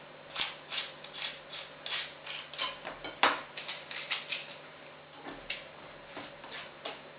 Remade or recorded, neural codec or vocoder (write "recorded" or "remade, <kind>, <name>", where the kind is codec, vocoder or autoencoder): recorded